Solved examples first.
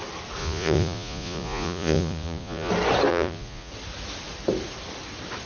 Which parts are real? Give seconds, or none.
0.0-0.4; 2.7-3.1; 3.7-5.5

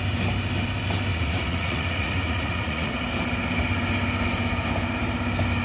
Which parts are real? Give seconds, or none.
0.0-1.1; 2.9-5.6

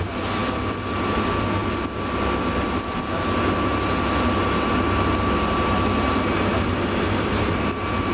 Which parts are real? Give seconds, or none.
0.0-8.1

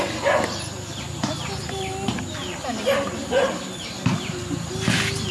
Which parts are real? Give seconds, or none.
0.0-5.3

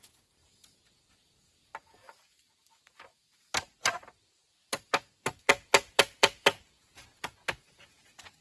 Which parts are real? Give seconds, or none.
1.7-5.4

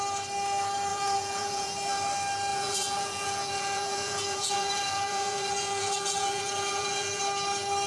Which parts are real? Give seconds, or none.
0.0-0.9; 1.7-2.5; 7.2-7.9